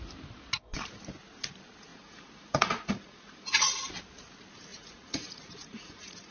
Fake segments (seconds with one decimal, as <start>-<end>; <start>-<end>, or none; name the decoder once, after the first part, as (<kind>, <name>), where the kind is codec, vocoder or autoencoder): 1.9-3.9 (vocoder, Vocos); 4.7-6.3